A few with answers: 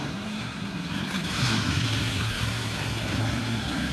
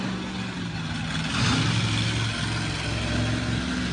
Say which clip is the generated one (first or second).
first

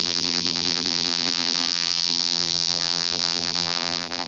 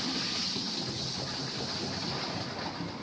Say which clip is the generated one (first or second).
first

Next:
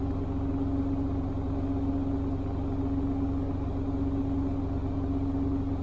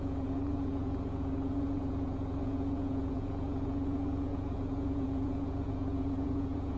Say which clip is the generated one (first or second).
second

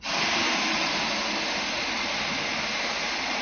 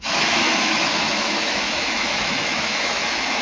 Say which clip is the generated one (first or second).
second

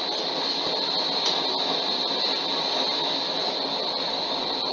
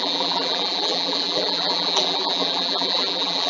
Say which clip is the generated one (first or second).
second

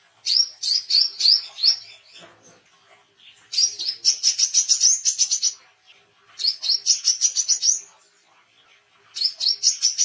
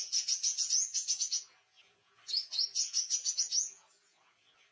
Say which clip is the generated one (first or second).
second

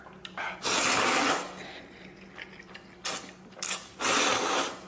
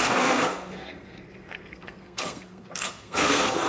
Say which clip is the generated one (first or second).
second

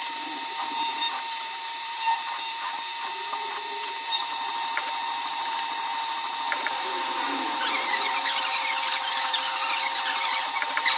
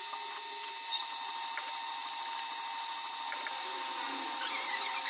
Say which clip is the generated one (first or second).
first